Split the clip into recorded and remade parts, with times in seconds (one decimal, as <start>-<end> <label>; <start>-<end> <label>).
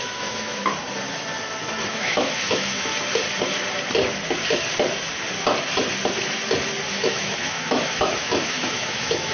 0.0-0.7 remade; 0.7-1.9 recorded; 1.9-2.9 remade; 2.9-6.9 recorded; 6.9-9.3 remade